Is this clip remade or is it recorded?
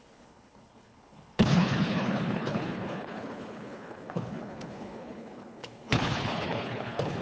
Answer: remade